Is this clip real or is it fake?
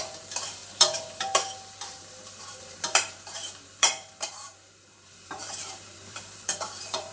fake